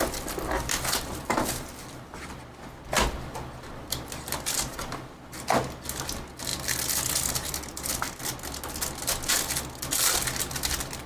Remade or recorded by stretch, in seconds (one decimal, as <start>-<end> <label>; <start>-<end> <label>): 0.0-11.1 recorded